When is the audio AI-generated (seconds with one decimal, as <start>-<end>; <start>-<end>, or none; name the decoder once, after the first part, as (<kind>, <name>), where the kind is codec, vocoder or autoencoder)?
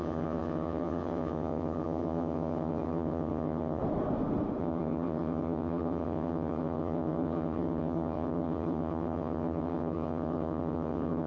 0.0-3.8 (vocoder, HiFi-GAN); 4.6-11.3